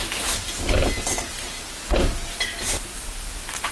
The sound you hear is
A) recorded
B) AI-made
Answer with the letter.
A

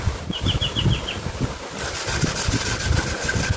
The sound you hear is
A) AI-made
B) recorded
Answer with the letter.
B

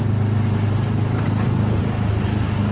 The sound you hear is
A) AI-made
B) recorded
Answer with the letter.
B